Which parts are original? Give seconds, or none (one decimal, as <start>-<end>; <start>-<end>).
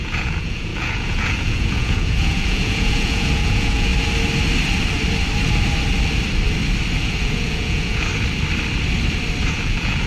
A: 3.9-7.0; 8.1-9.4